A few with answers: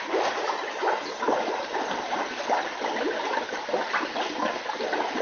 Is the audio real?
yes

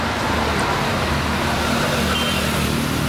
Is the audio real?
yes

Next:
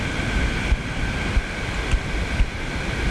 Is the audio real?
yes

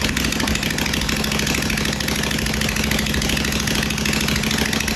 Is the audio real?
yes